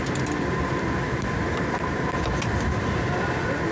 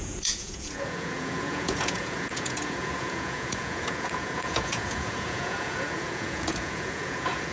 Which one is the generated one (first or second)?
second